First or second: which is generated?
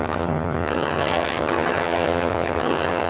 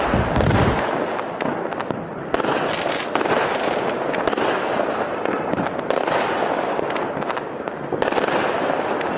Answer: first